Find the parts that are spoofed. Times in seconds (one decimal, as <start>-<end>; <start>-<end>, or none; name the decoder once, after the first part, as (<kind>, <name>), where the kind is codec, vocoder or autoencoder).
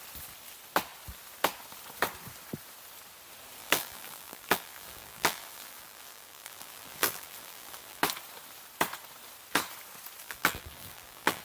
3.6-8.0 (vocoder, BigVGAN v2); 10.2-11.4